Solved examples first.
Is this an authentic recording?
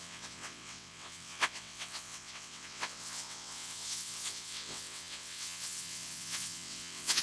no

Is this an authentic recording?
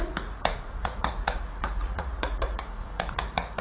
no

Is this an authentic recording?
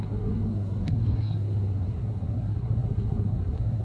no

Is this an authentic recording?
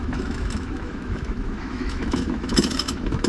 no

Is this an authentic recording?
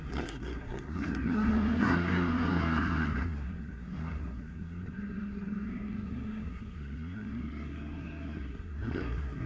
no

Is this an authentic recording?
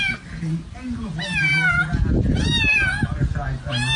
yes